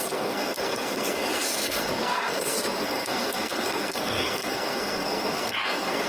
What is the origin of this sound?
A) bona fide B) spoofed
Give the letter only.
B